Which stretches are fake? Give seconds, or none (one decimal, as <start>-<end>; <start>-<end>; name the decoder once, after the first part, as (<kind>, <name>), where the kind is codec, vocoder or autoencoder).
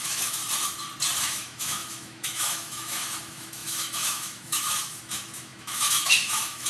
0.0-0.4 (autoencoder, DAC-VAE); 1.2-6.7